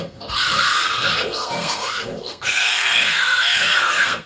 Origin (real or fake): fake